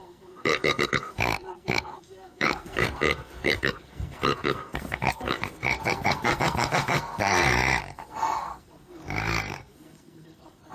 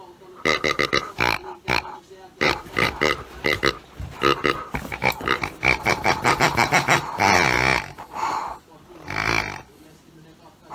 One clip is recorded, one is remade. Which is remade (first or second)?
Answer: first